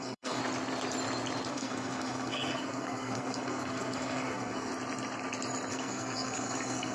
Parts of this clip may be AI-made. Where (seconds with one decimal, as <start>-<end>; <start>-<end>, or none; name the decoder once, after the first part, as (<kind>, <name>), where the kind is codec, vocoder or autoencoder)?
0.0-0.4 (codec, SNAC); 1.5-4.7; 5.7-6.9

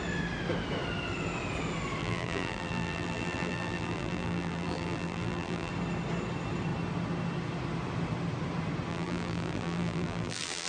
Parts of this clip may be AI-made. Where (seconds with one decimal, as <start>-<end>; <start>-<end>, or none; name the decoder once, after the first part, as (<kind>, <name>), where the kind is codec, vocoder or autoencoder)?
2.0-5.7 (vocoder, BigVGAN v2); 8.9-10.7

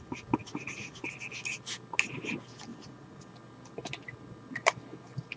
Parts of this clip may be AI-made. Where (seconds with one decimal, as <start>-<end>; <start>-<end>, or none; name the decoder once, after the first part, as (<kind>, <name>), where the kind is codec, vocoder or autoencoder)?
0.4-1.1 (vocoder, Vocos); 2.7-3.2

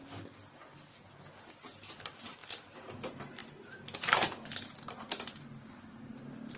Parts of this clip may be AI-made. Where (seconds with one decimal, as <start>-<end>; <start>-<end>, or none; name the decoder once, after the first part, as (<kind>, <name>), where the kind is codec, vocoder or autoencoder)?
none

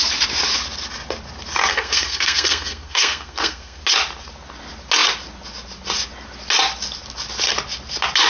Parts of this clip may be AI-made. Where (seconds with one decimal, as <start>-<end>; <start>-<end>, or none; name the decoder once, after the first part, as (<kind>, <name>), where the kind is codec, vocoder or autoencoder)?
1.7-3.8 (codec, SNAC)

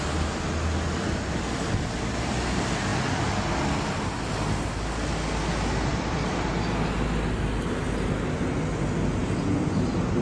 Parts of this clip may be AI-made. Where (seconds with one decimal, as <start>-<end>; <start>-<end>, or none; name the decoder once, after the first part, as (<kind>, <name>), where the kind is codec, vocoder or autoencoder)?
2.9-3.6 (vocoder, BigVGAN v2); 5.9-6.5; 9.2-10.2